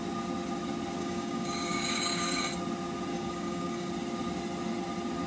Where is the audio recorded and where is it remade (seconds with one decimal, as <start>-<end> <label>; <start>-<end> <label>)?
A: 0.0-1.0 recorded; 1.0-2.4 remade; 2.4-3.1 recorded; 3.1-3.9 remade; 3.9-5.3 recorded